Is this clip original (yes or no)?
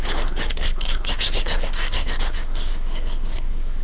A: no